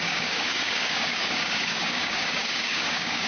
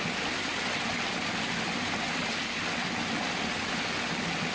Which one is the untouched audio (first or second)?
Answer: second